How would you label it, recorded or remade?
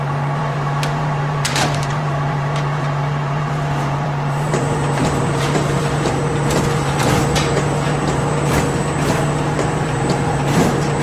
remade